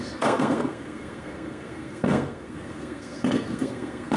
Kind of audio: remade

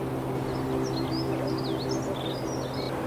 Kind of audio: recorded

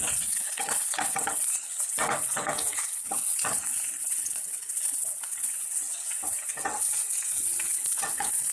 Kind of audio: remade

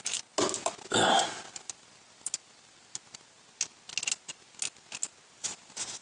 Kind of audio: recorded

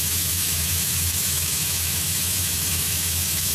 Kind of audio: remade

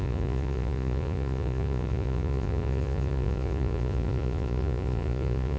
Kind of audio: remade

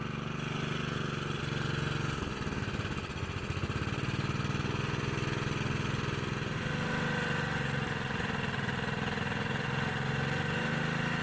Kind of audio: recorded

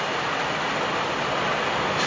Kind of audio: recorded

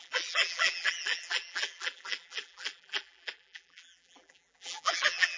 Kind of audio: remade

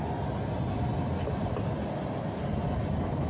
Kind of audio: recorded